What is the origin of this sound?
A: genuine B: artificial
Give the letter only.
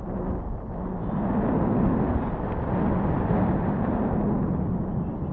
A